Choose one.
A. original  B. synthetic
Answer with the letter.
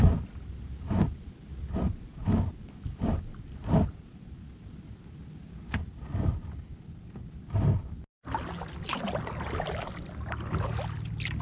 A